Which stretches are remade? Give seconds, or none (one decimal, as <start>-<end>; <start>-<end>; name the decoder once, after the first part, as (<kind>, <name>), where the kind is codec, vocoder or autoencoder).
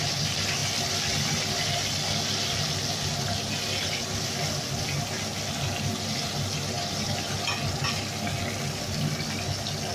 none